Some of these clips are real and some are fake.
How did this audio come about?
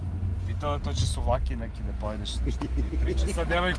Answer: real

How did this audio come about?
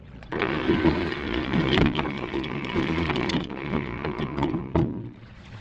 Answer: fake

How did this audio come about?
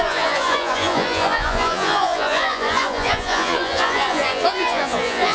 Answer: fake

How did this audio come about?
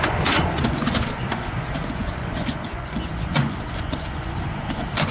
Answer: fake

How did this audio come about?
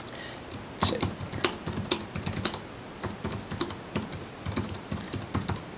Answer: real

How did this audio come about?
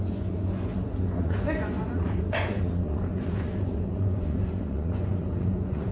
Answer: fake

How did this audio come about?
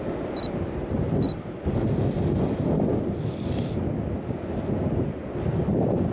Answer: real